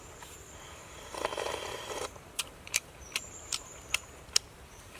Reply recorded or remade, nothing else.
remade